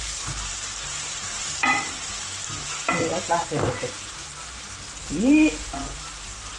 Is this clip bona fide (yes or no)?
no